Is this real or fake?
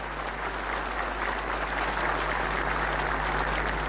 real